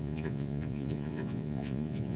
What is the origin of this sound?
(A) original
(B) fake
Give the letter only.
B